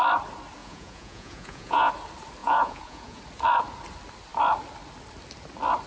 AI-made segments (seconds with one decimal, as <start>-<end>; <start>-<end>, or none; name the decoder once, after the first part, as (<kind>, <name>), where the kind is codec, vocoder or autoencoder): 0.6-1.9 (vocoder, Vocos); 2.4-3.2